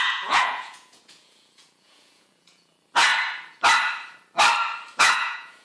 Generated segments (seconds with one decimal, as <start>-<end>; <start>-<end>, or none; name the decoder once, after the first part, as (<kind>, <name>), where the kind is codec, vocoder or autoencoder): 0.0-3.1 (vocoder, Vocos); 5.0-5.6